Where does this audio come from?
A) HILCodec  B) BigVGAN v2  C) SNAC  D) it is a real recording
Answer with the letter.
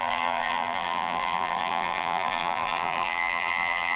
B